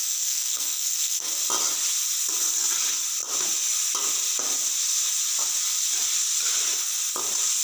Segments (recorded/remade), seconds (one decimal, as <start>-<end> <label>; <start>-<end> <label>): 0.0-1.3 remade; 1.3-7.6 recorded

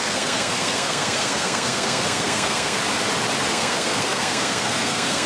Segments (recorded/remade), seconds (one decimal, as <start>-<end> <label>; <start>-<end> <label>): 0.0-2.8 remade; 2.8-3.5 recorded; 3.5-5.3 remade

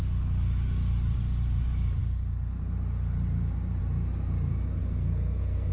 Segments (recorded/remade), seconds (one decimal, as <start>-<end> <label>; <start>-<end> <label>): 0.0-4.8 recorded; 4.8-5.7 remade